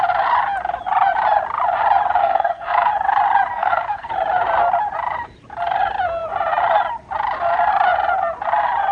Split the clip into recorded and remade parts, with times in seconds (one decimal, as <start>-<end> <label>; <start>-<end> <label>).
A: 0.0-2.2 recorded; 2.2-2.9 remade; 2.9-3.5 recorded; 3.5-4.1 remade; 4.1-8.9 recorded